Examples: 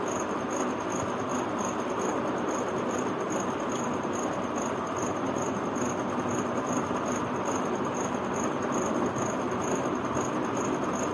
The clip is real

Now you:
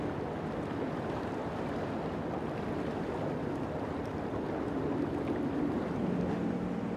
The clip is real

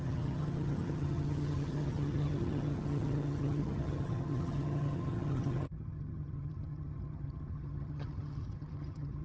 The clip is fake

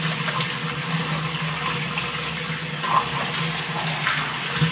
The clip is real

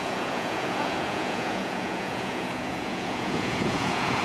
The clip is fake